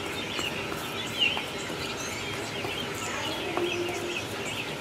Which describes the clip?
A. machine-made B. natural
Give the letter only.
B